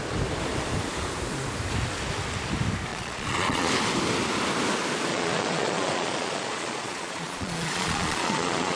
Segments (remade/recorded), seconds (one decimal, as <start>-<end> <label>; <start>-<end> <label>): 0.0-2.9 recorded; 2.9-3.7 remade; 3.7-5.1 recorded; 5.1-8.8 remade